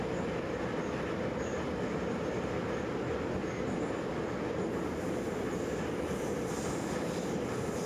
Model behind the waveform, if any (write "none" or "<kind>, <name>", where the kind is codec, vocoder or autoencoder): none